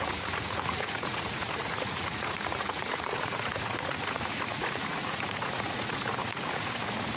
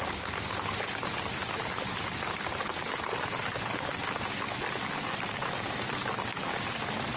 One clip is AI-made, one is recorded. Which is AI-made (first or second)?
first